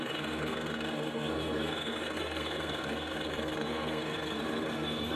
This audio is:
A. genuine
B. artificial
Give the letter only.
B